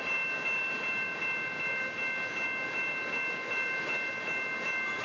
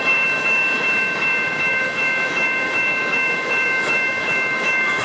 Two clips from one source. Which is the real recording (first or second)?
first